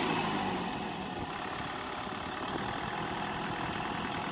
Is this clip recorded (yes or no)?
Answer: yes